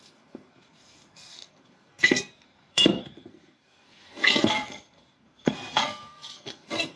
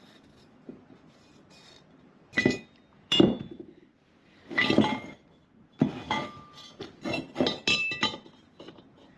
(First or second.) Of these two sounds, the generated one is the first